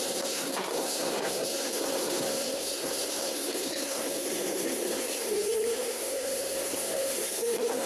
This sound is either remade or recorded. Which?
remade